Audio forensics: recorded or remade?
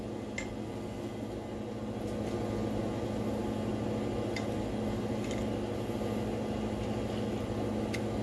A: recorded